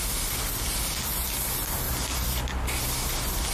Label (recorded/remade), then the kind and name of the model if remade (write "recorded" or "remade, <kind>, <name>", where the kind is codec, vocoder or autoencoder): recorded